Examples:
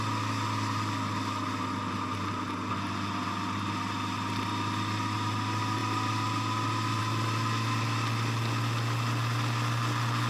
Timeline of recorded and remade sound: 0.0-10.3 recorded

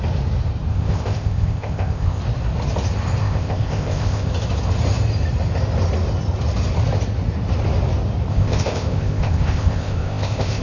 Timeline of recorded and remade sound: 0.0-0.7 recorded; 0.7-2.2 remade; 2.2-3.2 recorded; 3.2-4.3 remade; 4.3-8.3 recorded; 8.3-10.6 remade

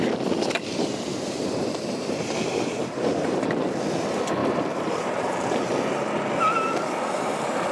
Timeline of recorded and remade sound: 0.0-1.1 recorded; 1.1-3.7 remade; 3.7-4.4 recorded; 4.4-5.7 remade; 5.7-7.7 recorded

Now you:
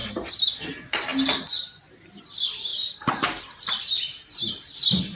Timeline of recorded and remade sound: 0.0-5.1 recorded

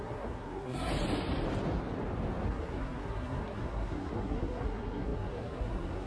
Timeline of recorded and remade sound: 0.0-0.9 remade; 0.9-2.5 recorded; 2.5-6.1 remade

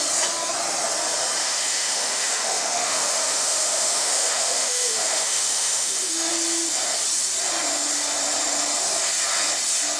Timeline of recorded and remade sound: 0.0-1.4 recorded; 1.4-6.3 remade; 6.3-10.0 recorded

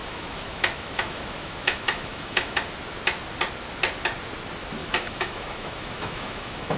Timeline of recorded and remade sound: 0.0-2.6 remade; 2.6-4.8 recorded; 4.8-6.8 remade

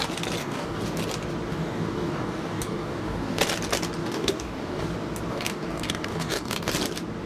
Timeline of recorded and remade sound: 0.0-0.4 recorded; 0.4-1.0 remade; 1.0-1.5 recorded; 1.5-3.4 remade; 3.4-4.0 recorded; 4.0-4.8 remade; 4.8-5.3 recorded; 5.3-6.7 remade; 6.7-7.3 recorded